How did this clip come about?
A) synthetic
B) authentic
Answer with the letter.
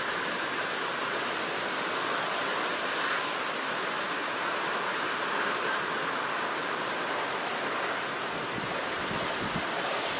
B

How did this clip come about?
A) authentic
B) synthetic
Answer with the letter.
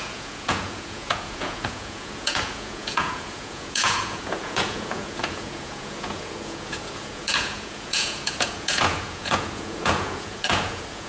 B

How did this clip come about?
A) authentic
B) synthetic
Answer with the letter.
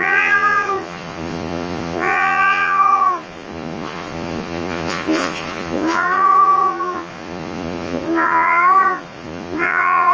B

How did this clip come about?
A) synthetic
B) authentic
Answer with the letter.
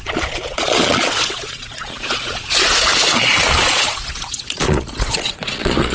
A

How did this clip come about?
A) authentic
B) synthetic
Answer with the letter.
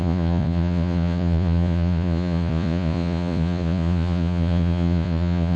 B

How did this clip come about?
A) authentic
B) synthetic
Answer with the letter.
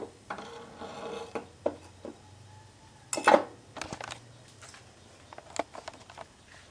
A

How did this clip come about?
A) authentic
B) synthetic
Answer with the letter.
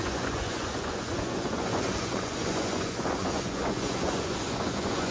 B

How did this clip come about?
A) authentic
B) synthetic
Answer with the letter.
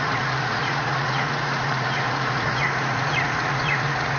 B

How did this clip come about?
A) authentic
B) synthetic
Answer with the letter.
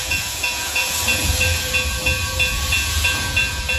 B